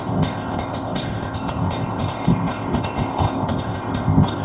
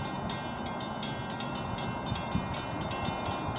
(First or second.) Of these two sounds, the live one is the second